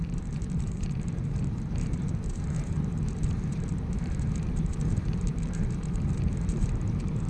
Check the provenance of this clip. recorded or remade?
remade